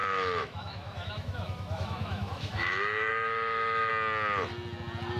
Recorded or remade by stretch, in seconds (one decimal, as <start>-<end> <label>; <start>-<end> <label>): 0.0-3.9 remade; 3.9-5.2 recorded